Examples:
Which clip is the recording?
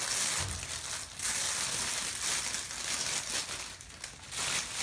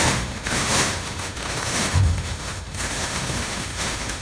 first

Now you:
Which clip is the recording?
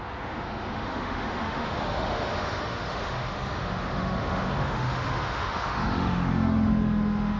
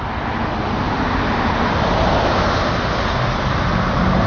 second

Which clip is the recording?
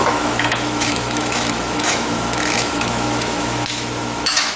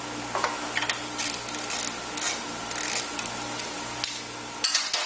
second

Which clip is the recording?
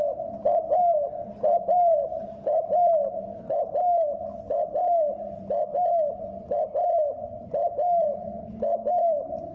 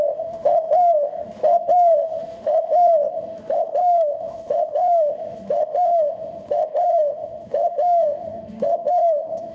first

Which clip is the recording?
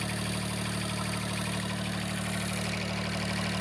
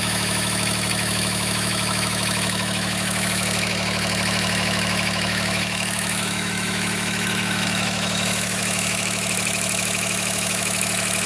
first